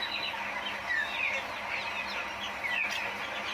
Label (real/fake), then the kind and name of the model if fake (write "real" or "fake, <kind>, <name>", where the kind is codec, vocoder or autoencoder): real